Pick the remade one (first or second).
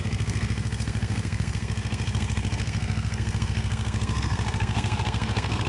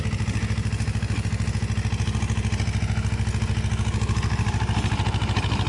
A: first